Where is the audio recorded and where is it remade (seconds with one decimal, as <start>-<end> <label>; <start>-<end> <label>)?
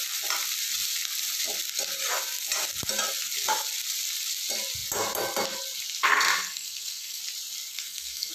0.0-6.0 recorded; 6.0-7.2 remade; 7.2-7.7 recorded; 7.7-8.3 remade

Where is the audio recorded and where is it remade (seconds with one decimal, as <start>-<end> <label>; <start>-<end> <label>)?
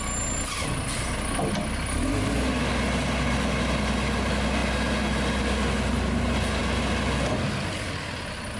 0.0-8.6 recorded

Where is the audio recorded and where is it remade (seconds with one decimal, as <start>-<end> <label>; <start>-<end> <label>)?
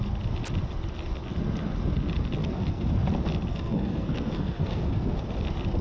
0.0-2.4 recorded; 2.4-2.9 remade; 2.9-3.5 recorded; 3.5-5.2 remade; 5.2-5.8 recorded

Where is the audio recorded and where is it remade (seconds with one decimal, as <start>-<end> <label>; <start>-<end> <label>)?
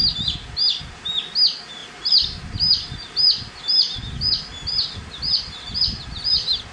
0.0-6.7 recorded